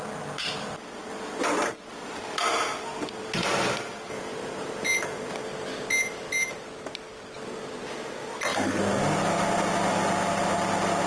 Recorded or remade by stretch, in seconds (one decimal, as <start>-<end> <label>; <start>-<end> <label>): 0.0-11.1 recorded